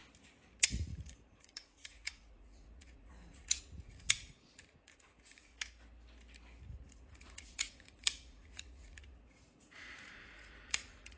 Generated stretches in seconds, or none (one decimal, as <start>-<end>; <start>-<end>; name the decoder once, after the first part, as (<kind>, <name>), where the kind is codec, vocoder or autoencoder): 0.6-5.5 (vocoder, Vocos); 6.9-11.2